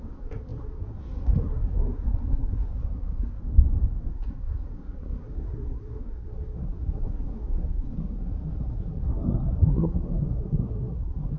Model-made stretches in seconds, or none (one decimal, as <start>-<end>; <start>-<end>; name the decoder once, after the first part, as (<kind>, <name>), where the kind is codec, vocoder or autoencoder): 0.0-3.4 (codec, SNAC); 4.1-11.4